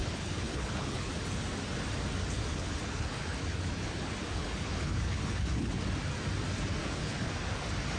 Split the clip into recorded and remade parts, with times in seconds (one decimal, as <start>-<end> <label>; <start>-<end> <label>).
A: 0.0-1.1 remade; 1.1-2.5 recorded; 2.5-5.8 remade; 5.8-6.8 recorded; 6.8-7.3 remade; 7.3-8.0 recorded